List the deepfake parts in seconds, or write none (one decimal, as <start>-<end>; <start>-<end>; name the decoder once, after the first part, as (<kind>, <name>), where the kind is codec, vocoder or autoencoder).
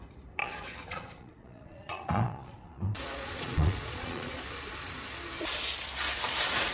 0.4-4.4 (vocoder, Vocos)